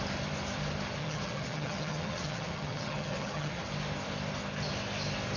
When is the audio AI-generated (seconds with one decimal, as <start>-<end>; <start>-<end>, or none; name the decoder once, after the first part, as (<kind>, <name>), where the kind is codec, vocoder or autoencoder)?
1.0-3.6 (vocoder, HiFi-GAN)